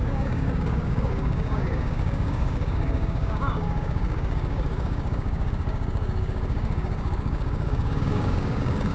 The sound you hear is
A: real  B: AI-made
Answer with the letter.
B